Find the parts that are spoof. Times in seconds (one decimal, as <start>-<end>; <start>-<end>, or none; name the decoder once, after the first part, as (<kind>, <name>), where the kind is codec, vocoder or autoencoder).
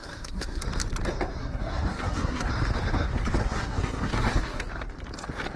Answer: 0.0-0.6 (codec, SNAC); 1.4-2.5; 3.4-4.7